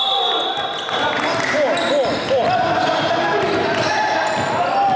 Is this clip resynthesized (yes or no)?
no